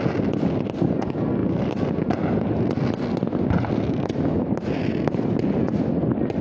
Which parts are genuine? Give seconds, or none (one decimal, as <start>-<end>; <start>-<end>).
0.0-6.4